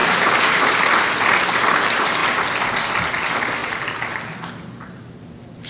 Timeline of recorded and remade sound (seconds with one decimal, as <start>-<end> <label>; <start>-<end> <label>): 0.0-0.8 remade; 0.8-3.6 recorded; 3.6-4.5 remade; 4.5-5.7 recorded